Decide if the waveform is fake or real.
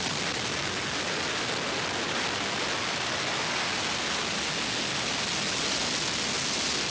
real